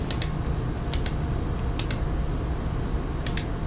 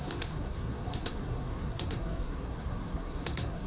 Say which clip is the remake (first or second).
second